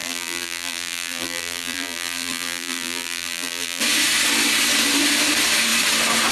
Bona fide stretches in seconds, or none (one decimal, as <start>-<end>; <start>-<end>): 3.8-6.3